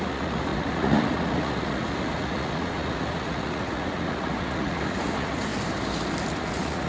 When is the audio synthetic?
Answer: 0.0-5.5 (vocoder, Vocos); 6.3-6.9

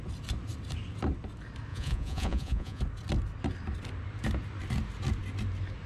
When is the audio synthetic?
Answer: 1.7-2.8 (vocoder, Vocos)